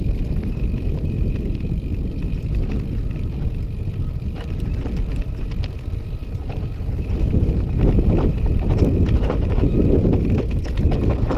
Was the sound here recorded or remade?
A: recorded